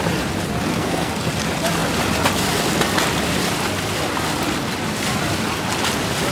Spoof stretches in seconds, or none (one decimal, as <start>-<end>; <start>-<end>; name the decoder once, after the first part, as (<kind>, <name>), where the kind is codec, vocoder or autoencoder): 0.7-1.3 (codec, SNAC)